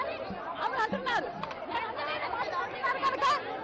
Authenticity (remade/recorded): recorded